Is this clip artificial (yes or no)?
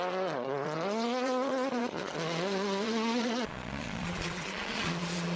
yes